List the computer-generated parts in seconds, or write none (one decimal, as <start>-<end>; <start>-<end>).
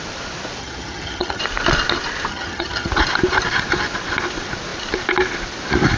0.6-1.4; 2.3-2.9